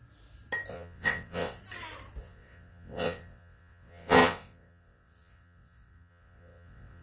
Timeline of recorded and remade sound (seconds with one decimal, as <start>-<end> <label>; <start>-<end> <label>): 0.0-0.7 recorded; 0.7-1.6 remade; 1.6-2.2 recorded; 2.2-7.0 remade